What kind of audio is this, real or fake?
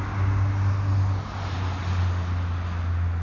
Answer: real